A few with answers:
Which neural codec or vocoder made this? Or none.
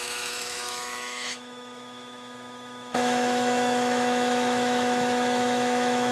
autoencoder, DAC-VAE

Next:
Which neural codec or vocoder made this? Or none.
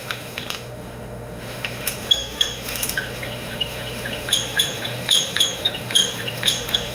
autoencoder, DAC-VAE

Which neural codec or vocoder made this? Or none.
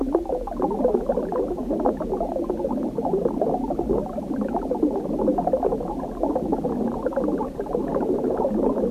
none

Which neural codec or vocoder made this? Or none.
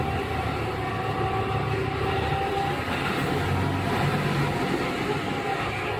none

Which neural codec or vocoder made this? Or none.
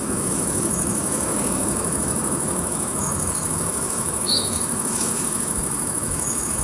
autoencoder, DAC-VAE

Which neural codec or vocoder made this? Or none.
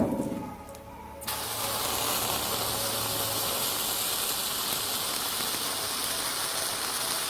none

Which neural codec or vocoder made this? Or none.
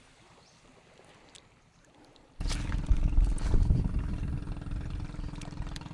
none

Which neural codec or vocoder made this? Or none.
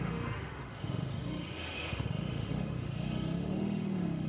autoencoder, DAC-VAE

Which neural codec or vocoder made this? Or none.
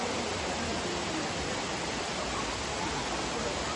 none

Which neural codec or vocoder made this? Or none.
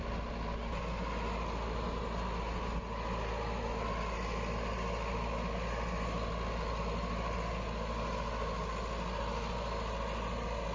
none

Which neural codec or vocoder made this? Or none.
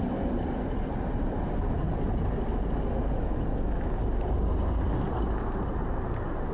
none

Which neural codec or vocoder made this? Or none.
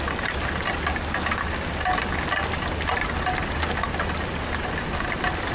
none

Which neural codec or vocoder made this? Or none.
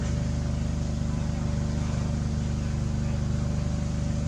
none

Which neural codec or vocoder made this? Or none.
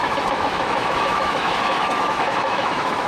autoencoder, DAC-VAE